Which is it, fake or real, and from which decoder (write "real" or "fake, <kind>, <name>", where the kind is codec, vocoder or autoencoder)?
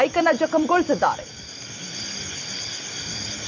real